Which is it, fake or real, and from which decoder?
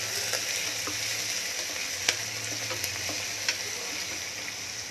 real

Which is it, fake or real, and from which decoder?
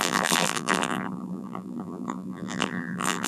fake, vocoder, BigVGAN v2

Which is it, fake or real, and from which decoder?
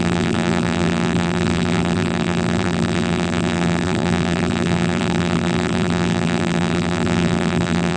fake, vocoder, BigVGAN v2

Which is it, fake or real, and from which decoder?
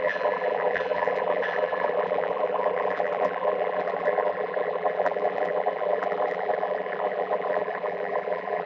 fake, vocoder, BigVGAN v2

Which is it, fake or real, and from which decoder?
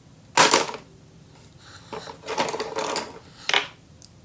real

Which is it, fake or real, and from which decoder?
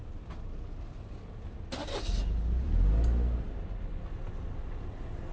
real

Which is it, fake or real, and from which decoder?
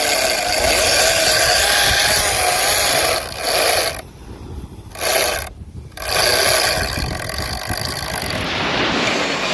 real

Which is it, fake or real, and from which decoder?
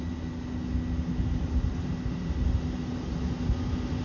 real